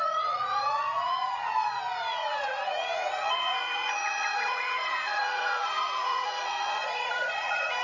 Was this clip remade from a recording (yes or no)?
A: yes